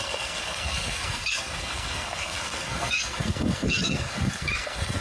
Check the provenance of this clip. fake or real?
fake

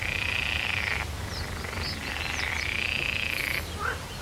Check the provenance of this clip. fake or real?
real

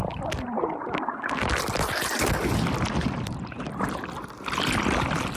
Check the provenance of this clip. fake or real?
real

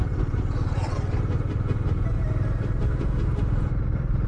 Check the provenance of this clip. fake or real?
real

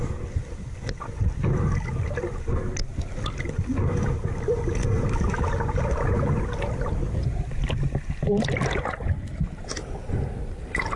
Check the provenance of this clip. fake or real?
real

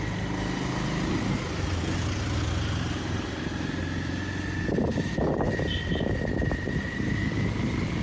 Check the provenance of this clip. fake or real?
real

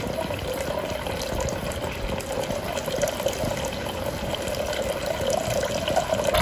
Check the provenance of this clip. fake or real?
real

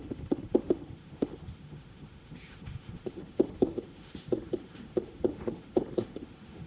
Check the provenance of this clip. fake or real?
fake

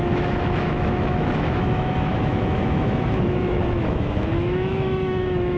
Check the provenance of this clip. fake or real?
fake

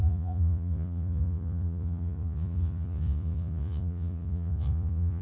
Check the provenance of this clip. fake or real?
fake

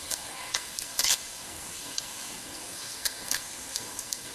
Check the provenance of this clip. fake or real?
fake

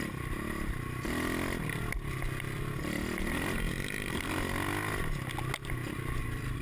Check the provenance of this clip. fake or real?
real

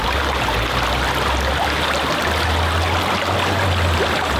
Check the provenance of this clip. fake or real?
real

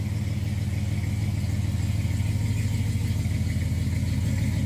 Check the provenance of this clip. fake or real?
real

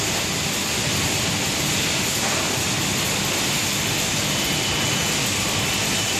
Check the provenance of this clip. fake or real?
real